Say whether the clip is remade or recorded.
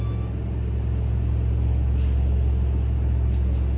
recorded